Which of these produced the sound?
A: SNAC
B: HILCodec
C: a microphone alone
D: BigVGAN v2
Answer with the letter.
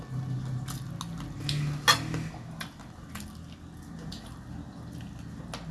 C